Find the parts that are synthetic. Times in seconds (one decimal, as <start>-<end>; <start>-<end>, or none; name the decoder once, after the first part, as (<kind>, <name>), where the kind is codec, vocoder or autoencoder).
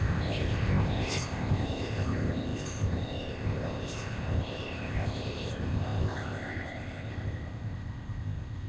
0.0-8.7 (codec, ZipCodec)